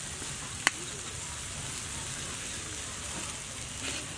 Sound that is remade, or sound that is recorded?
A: recorded